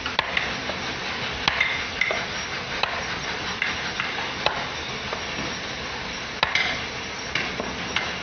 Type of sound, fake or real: real